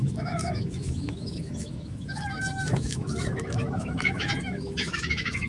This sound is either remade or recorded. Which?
remade